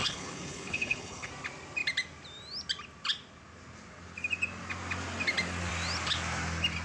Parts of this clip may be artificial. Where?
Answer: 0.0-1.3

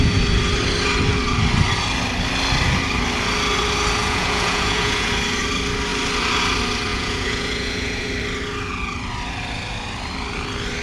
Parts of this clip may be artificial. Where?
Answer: 4.0-5.1; 6.9-8.1

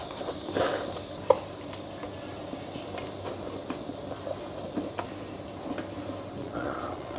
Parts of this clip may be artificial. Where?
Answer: 6.4-7.2

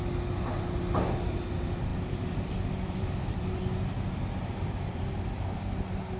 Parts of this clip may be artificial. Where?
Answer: 1.9-5.6

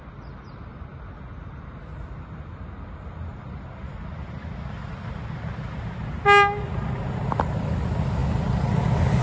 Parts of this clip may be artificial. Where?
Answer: none

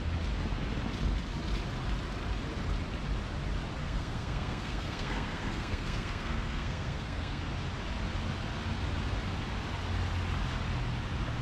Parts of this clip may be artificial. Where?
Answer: 3.8-7.4

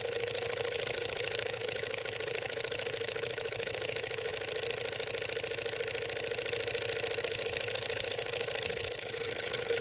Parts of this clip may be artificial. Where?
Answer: 0.0-4.3; 7.2-9.8

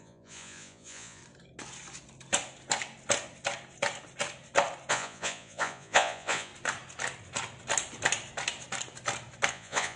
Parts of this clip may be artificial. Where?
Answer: 0.0-1.2; 4.9-6.5; 9.5-10.0